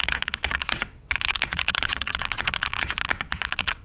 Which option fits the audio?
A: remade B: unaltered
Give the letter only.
A